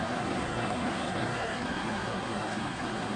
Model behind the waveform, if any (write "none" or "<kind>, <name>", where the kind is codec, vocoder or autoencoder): codec, SNAC